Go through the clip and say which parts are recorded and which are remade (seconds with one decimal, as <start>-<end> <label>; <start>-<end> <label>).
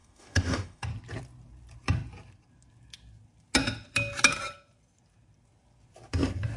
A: 0.0-0.9 remade; 0.9-6.6 recorded